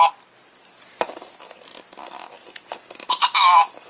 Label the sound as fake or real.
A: real